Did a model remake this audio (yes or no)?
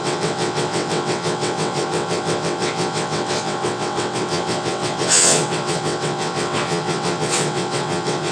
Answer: yes